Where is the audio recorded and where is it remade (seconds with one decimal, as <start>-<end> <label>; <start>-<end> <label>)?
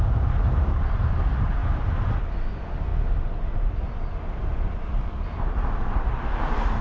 0.0-6.8 recorded